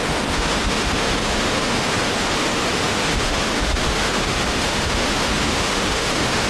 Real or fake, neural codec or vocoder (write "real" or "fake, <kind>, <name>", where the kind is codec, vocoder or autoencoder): fake, autoencoder, DAC-VAE